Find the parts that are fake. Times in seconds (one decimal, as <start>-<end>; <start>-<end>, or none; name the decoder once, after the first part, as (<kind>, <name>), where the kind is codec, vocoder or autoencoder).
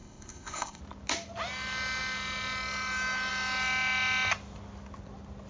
0.0-0.8 (codec, ZipCodec)